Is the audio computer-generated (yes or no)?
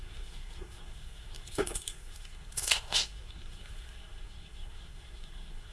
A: yes